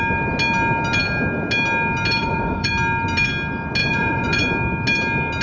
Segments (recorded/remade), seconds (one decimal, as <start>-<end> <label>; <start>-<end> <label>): 0.0-2.2 recorded; 2.2-2.7 remade; 2.7-3.8 recorded; 3.8-4.5 remade; 4.5-5.4 recorded